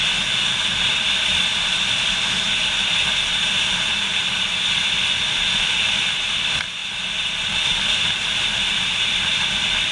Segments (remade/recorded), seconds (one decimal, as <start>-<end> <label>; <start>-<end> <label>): 0.0-9.9 recorded